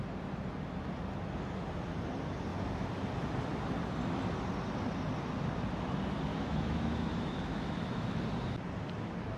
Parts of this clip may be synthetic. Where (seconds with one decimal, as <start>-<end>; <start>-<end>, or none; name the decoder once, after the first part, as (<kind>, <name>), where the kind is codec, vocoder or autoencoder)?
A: 6.3-8.2 (autoencoder, DAC-VAE)